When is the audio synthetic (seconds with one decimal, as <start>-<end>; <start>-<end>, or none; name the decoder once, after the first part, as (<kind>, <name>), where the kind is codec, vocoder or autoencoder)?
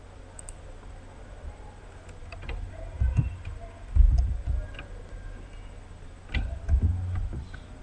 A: none